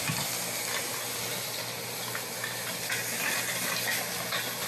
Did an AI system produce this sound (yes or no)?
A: no